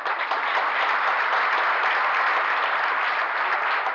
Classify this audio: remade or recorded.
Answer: recorded